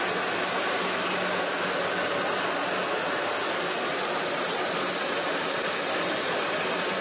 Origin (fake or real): real